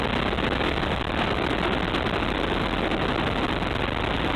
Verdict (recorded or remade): recorded